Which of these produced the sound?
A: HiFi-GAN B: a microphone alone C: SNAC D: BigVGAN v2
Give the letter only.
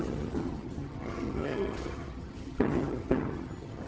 A